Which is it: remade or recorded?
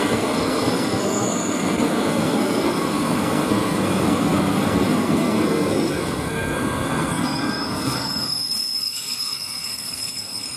remade